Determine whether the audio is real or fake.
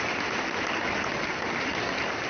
real